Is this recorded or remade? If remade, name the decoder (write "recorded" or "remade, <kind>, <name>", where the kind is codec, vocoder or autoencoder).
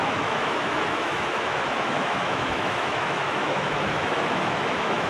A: remade, autoencoder, DAC-VAE